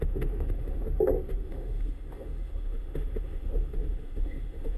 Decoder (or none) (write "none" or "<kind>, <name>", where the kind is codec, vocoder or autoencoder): autoencoder, DAC-VAE